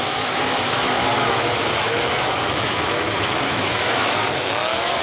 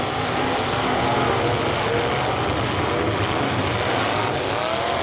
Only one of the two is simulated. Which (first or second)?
first